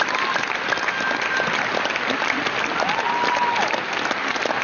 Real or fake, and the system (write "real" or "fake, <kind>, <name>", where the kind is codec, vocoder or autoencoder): real